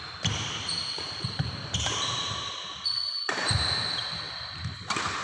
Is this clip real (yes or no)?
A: yes